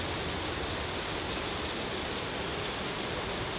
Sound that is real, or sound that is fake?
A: real